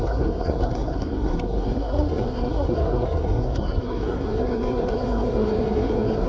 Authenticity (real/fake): fake